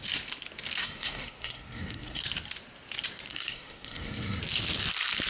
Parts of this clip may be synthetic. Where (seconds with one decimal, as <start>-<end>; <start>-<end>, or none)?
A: 0.8-2.2; 3.3-4.4